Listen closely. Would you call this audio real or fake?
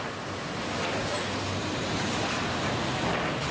real